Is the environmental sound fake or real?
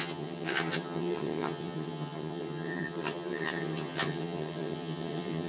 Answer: fake